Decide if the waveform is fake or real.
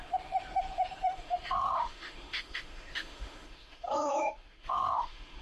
fake